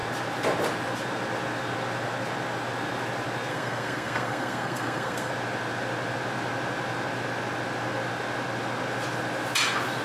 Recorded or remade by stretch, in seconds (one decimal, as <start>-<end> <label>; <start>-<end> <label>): 0.0-3.5 recorded; 3.5-5.3 remade; 5.3-10.0 recorded